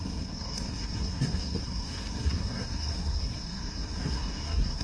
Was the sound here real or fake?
fake